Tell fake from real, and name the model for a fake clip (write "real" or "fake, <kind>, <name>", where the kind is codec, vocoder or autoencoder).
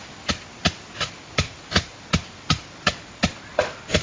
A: real